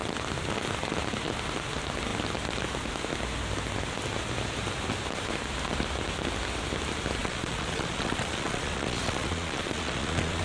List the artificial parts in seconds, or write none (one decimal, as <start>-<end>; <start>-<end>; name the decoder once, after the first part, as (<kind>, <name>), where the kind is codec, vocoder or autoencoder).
7.2-10.4 (vocoder, Vocos)